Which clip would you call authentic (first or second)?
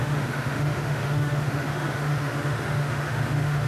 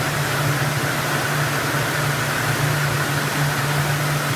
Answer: second